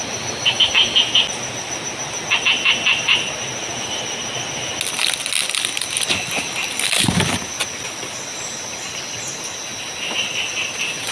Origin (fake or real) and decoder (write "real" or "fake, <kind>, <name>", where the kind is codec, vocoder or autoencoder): real